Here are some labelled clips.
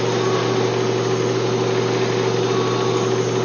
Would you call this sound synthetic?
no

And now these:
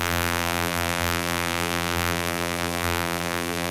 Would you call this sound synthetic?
yes